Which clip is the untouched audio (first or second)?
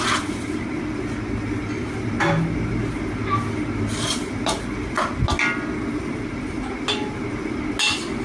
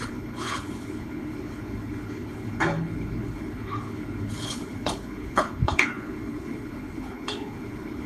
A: first